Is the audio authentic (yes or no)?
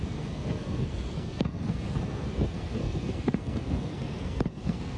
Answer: no